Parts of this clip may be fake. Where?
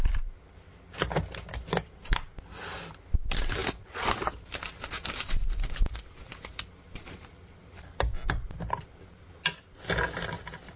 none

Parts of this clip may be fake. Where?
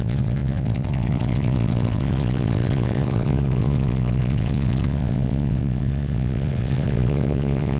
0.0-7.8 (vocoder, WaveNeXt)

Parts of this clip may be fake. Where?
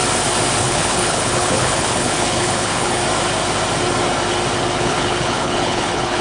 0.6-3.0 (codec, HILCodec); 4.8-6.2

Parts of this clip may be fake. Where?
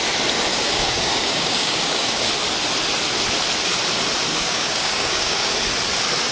0.5-2.3 (codec, DAC); 4.3-5.5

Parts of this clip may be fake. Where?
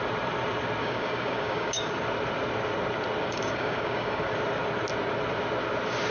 0.8-1.9 (codec, DAC); 3.2-4.2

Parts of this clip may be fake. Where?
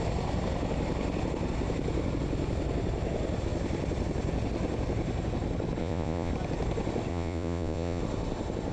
5.8-6.3 (vocoder, Vocos); 7.1-8.0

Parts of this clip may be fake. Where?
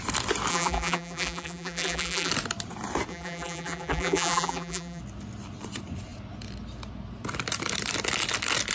0.5-2.3 (vocoder, BigVGAN v2); 3.1-5.0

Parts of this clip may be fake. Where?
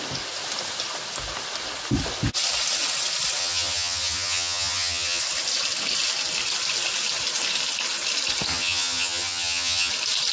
3.4-5.2 (vocoder, HiFi-GAN); 8.5-9.9